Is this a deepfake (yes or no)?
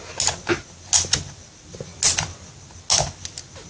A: no